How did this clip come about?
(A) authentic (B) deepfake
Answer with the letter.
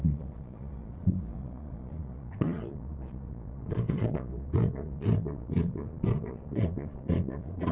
B